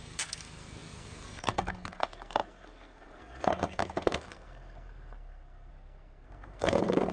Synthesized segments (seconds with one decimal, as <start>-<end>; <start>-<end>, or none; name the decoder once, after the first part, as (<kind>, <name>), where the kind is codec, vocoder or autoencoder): 0.0-7.1 (codec, SNAC)